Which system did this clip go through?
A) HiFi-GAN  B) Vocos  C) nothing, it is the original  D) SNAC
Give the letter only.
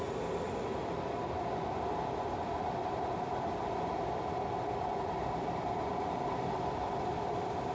C